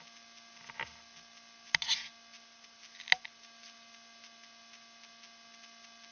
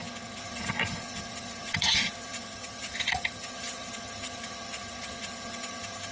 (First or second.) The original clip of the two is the first